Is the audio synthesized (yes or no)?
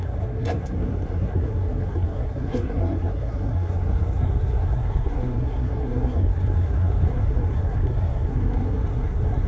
yes